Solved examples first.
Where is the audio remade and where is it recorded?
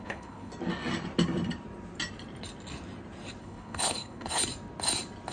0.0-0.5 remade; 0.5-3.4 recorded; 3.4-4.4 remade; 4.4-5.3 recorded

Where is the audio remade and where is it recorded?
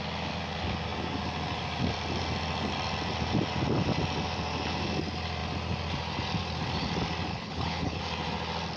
0.0-7.3 recorded; 7.3-8.0 remade; 8.0-8.8 recorded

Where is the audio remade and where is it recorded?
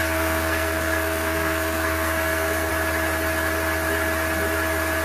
0.0-2.7 remade; 2.7-5.0 recorded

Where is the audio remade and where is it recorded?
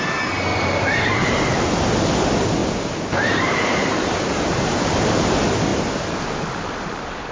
0.0-0.5 recorded; 0.5-1.8 remade; 1.8-2.6 recorded; 2.6-5.2 remade; 5.2-7.3 recorded